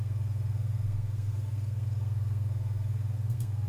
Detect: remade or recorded remade